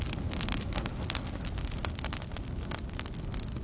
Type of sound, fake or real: real